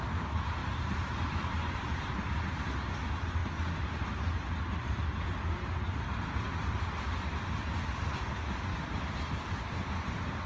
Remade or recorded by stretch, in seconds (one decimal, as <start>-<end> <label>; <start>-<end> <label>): 0.0-0.6 recorded; 0.6-2.9 remade; 2.9-8.7 recorded; 8.7-10.1 remade; 10.1-10.5 recorded